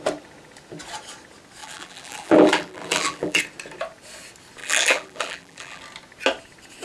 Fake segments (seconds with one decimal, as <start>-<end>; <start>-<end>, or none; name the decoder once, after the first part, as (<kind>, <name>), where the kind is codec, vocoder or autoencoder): 1.6-3.4 (vocoder, BigVGAN v2); 4.6-5.8